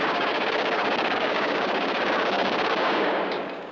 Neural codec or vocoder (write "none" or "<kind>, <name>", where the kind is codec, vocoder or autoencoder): codec, DAC